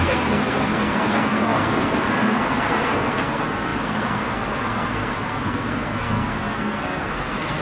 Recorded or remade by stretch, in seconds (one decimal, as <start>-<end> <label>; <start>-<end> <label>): 0.0-7.6 remade